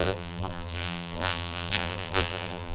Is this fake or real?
fake